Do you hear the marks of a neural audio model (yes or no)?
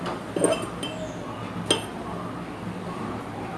no